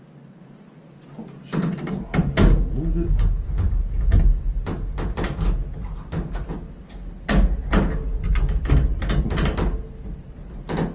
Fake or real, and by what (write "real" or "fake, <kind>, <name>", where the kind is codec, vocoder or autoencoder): real